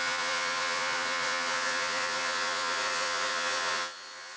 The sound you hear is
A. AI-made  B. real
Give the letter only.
A